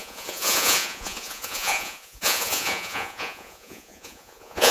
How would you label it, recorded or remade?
remade